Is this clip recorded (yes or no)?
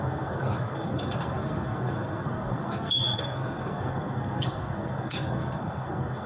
no